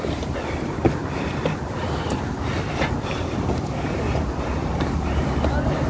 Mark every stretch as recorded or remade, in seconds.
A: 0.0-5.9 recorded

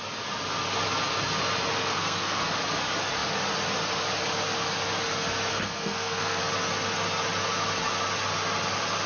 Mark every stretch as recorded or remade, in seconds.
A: 0.0-1.7 recorded; 1.7-2.4 remade; 2.4-5.5 recorded; 5.5-6.4 remade; 6.4-9.1 recorded

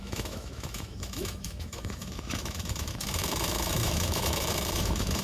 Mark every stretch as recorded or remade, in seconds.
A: 0.0-5.2 remade